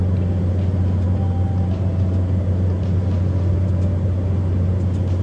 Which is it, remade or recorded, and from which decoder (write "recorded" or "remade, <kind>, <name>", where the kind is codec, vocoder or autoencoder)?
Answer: recorded